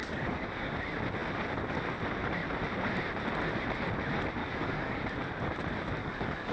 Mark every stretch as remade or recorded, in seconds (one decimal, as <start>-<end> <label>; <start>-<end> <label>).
0.0-0.7 remade; 0.7-4.4 recorded; 4.4-5.0 remade; 5.0-6.0 recorded; 6.0-6.5 remade